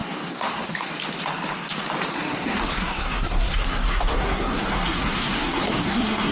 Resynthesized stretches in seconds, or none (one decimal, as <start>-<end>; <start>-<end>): 0.0-0.9; 2.1-6.3